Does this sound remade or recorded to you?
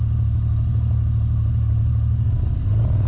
recorded